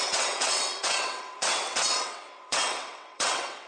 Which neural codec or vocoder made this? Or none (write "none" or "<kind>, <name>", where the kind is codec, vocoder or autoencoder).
vocoder, WaveNeXt